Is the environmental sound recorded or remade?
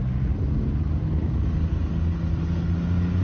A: recorded